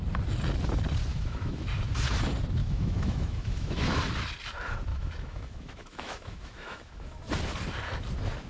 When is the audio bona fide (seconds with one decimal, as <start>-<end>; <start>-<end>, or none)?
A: 0.0-1.1; 1.7-2.6; 4.0-4.9; 7.3-8.5